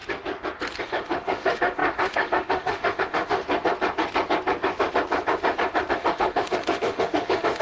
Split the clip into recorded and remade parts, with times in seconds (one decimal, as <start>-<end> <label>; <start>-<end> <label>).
0.0-0.8 recorded; 0.8-3.4 remade; 3.4-5.9 recorded; 5.9-7.6 remade